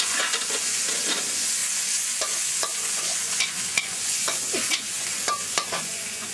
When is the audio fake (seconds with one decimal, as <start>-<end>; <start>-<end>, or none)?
0.0-6.3